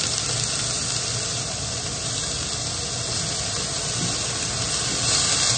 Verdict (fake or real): real